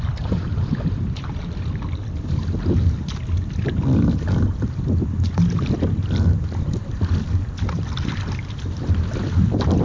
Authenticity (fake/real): fake